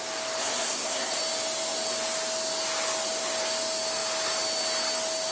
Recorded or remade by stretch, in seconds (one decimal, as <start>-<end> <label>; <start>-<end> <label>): 0.0-0.4 recorded; 0.4-1.2 remade; 1.2-5.3 recorded